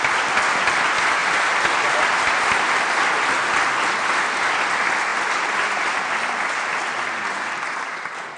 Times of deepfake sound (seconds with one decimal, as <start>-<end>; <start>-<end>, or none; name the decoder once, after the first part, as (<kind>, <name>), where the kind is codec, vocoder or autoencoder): none